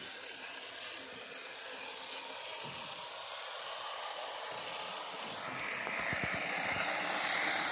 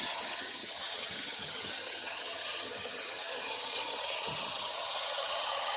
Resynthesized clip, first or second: second